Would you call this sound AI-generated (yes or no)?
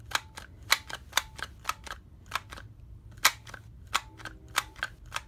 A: no